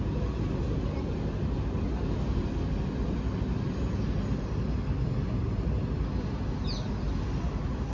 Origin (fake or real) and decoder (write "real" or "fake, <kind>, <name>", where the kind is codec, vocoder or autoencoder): real